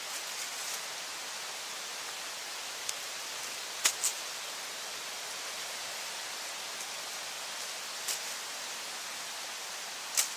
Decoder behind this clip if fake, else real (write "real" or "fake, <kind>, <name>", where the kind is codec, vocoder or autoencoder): real